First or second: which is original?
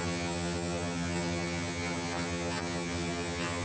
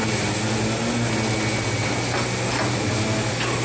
second